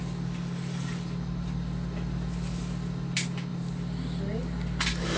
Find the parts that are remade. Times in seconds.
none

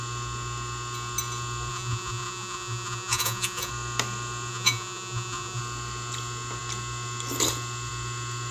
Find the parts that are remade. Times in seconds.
1.7-3.7 (vocoder, Vocos); 4.5-5.6

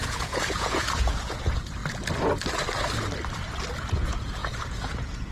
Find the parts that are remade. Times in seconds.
0.0-1.8 (vocoder, Vocos); 3.8-5.3

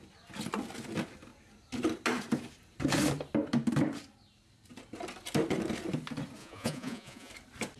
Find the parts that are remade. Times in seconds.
6.4-7.3 (vocoder, Vocos)

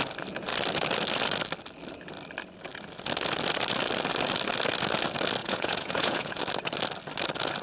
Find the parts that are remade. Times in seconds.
5.4-6.4 (vocoder, Vocos)

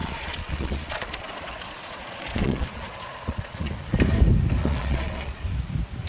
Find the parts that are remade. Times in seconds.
0.0-3.7 (vocoder, Vocos); 4.6-5.4